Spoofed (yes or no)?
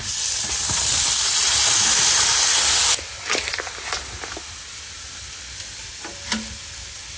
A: no